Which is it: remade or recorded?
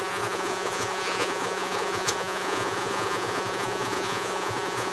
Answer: remade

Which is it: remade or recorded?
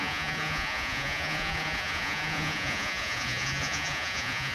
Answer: remade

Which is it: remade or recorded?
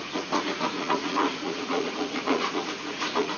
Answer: remade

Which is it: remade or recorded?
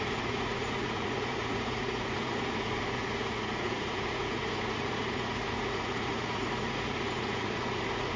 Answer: remade